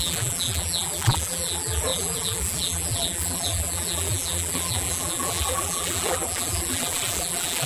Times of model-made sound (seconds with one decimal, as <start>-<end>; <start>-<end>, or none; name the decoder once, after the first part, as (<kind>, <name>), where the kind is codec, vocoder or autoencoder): 0.0-7.7 (vocoder, BigVGAN v2)